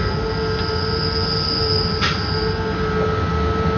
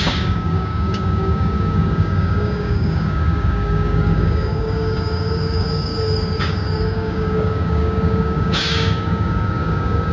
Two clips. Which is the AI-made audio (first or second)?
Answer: second